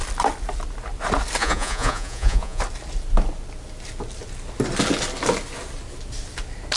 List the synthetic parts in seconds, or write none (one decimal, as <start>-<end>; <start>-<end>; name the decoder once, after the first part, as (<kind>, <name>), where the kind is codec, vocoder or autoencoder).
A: 1.4-2.6 (vocoder, Vocos)